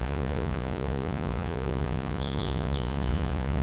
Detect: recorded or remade remade